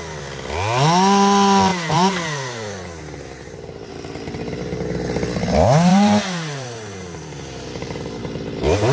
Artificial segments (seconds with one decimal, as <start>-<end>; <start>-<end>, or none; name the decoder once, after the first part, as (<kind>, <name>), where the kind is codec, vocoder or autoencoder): 1.7-3.9 (vocoder, BigVGAN v2); 5.9-8.2